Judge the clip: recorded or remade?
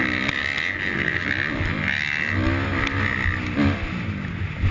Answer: recorded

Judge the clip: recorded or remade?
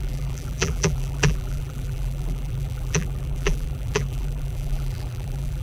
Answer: remade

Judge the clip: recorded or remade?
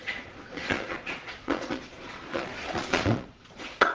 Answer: remade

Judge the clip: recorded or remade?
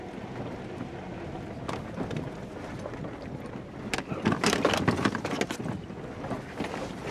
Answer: recorded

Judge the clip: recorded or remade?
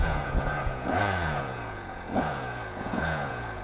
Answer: remade